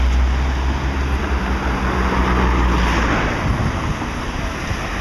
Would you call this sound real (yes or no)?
yes